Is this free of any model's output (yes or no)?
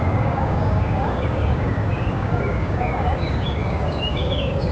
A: no